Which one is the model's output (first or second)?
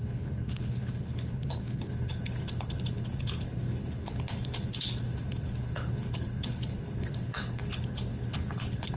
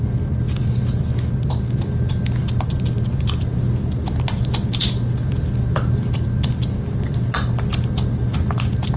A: first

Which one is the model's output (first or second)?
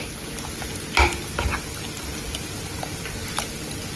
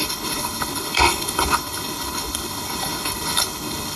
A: second